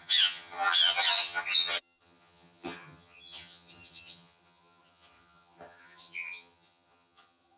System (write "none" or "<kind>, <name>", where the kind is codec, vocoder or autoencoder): vocoder, HiFi-GAN